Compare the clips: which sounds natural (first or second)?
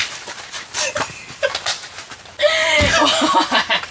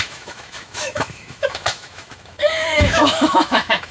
first